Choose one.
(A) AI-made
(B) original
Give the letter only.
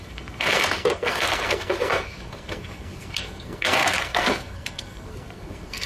A